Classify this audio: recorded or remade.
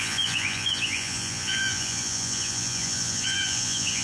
remade